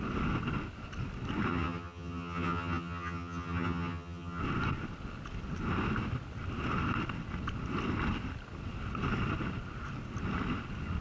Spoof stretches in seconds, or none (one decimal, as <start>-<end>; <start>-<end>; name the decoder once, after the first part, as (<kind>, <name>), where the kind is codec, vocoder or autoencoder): 1.5-4.4 (vocoder, HiFi-GAN)